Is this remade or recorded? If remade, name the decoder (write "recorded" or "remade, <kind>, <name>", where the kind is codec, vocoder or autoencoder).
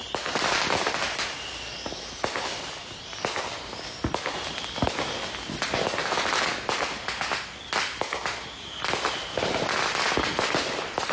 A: recorded